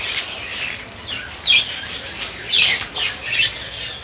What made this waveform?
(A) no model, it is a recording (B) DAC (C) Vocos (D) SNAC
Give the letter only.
A